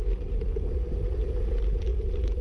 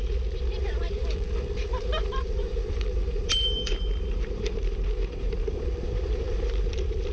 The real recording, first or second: first